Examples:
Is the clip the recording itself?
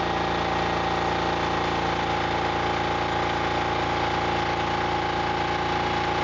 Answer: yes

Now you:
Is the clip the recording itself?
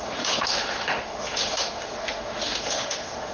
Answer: no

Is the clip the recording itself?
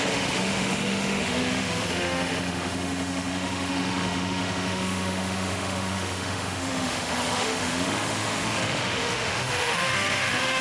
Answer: no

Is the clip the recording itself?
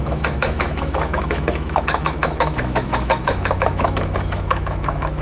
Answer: no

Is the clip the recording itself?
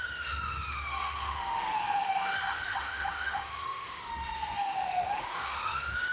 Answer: no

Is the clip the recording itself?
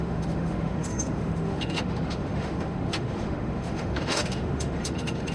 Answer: no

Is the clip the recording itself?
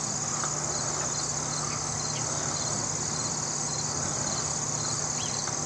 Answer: yes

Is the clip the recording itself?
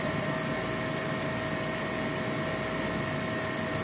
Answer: yes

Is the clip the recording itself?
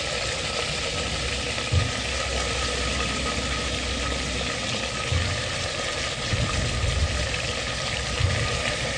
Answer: yes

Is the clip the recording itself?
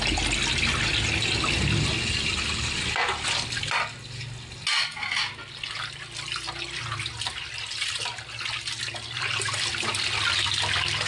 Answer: yes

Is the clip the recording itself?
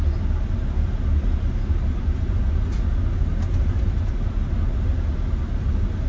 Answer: yes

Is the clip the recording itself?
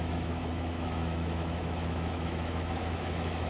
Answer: no